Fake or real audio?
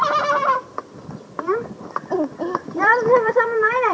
fake